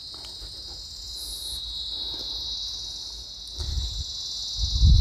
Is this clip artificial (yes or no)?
no